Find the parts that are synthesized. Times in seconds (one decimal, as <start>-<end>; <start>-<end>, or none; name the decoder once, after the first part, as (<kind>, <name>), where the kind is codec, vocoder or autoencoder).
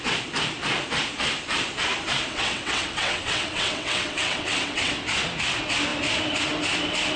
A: 2.3-4.9 (vocoder, WaveNeXt)